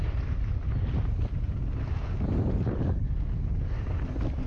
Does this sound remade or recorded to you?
recorded